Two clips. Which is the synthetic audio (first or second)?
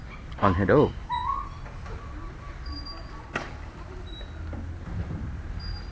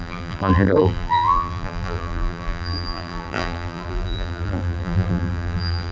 second